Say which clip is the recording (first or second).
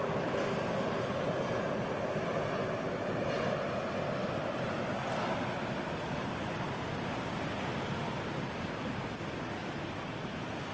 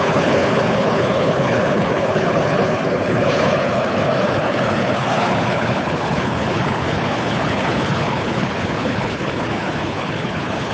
first